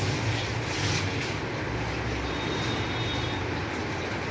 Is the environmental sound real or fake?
real